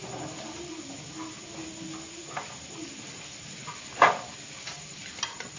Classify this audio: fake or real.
real